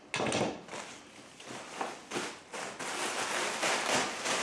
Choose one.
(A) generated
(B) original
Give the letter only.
B